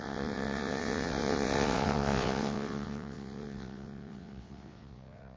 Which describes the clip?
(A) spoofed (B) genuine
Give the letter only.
A